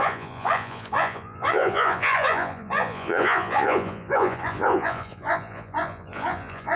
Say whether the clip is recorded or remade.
remade